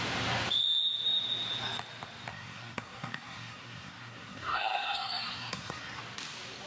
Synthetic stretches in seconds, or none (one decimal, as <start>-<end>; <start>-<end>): 2.3-6.0